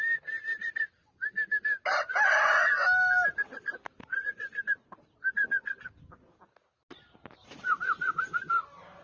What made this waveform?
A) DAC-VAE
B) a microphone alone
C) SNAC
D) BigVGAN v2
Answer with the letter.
B